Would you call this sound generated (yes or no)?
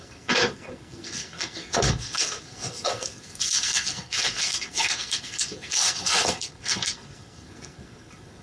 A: yes